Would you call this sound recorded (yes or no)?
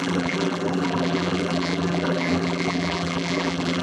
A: no